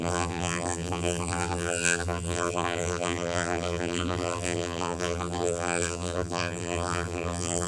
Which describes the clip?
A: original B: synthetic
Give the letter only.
B